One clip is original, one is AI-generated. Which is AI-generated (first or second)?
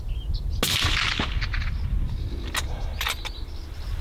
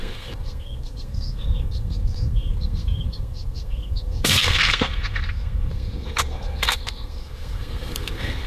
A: second